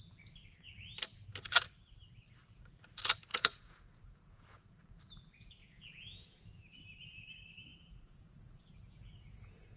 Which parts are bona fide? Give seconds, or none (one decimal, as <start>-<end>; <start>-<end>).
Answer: 0.0-3.3; 4.8-5.6; 6.8-7.7